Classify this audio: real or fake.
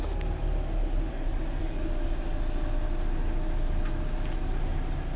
real